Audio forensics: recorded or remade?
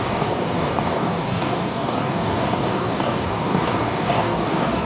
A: remade